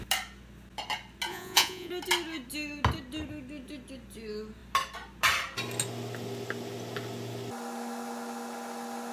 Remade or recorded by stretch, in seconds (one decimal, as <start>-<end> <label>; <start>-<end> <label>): 0.0-1.3 recorded; 1.3-1.9 remade; 1.9-9.1 recorded